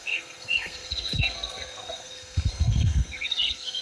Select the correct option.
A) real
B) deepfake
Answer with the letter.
B